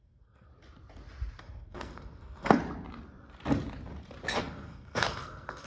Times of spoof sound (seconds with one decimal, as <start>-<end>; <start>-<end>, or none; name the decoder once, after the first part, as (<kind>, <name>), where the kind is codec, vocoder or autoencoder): 0.0-0.5 (codec, SNAC); 1.4-2.6; 4.4-5.7